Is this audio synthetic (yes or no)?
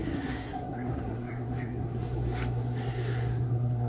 yes